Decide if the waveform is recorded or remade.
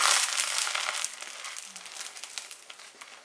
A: recorded